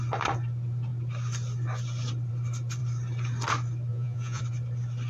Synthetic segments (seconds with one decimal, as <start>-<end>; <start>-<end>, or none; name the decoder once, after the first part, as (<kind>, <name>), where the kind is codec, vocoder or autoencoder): 3.9-4.4 (vocoder, Vocos)